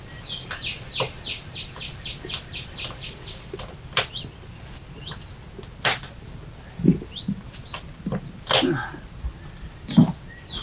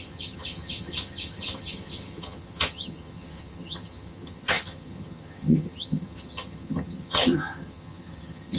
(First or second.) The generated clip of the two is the second